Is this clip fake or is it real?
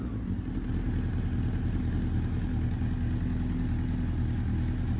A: real